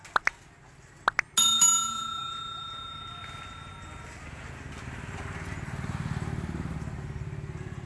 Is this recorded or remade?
recorded